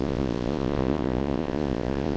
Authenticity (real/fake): fake